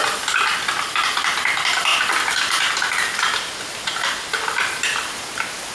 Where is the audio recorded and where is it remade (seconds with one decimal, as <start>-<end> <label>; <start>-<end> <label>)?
0.0-5.7 recorded